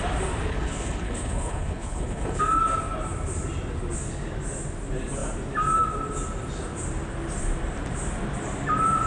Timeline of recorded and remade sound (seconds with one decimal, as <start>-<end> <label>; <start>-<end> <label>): 0.0-0.5 recorded; 0.5-2.4 remade; 2.4-9.1 recorded

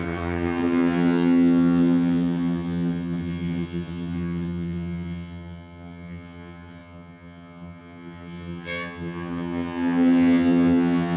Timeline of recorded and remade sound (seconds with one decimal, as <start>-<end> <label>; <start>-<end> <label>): 0.0-11.2 remade

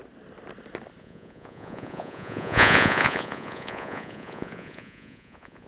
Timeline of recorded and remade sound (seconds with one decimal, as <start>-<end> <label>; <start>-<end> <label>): 0.0-1.0 recorded; 1.0-5.7 remade

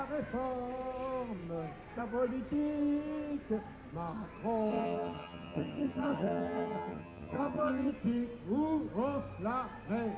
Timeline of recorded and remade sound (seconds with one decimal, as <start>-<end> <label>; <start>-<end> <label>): 0.0-4.7 recorded; 4.7-7.9 remade; 7.9-10.2 recorded